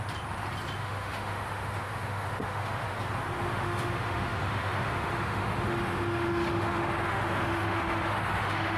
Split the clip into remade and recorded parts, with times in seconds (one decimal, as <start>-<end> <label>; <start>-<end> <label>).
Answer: 0.0-0.8 recorded; 0.8-3.0 remade; 3.0-3.4 recorded; 3.4-8.8 remade